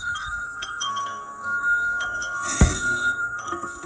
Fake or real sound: fake